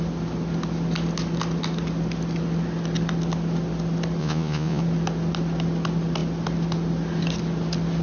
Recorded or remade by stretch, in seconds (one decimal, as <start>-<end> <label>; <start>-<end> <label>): 0.0-4.2 recorded; 4.2-4.8 remade; 4.8-8.0 recorded